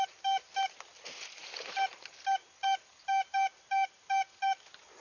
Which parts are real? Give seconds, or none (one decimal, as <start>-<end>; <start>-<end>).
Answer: 0.0-5.0